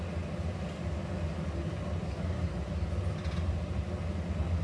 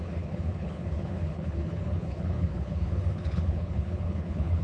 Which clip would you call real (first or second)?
first